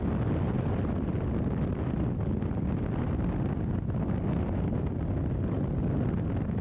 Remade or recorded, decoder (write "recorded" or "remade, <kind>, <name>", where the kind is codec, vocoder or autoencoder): recorded